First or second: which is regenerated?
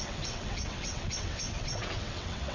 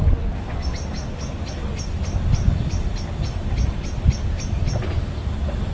first